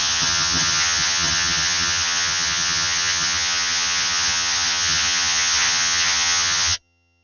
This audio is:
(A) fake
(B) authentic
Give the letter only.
A